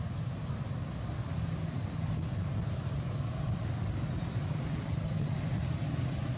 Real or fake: real